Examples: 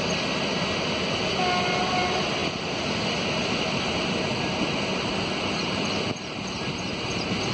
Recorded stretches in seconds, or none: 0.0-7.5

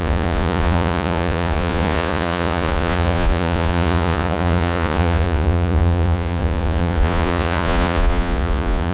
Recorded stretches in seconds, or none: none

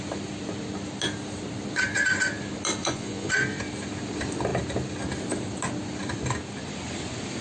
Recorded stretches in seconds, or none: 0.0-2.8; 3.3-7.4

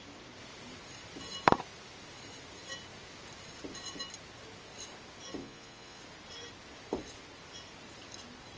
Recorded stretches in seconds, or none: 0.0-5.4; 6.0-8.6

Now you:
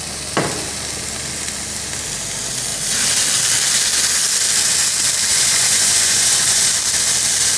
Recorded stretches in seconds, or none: 0.0-5.3; 6.7-7.6

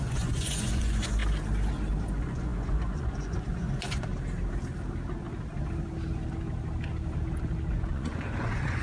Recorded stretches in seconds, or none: 1.2-1.9; 4.1-7.7

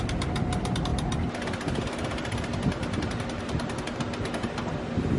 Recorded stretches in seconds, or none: 0.0-5.2